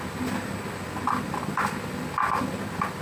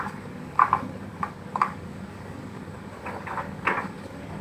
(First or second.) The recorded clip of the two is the first